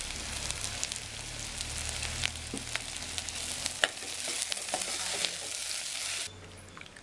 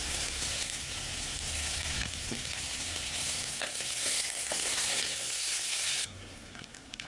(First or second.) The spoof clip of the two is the second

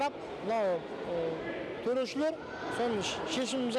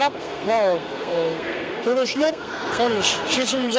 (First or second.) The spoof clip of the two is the second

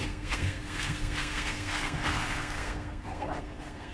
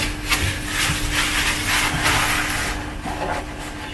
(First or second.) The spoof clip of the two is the first